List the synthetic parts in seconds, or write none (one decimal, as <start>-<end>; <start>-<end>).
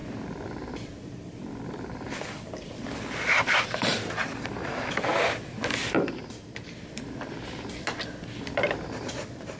0.0-3.9; 4.8-9.6